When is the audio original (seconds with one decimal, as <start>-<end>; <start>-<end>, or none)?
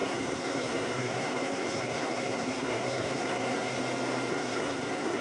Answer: 3.8-4.3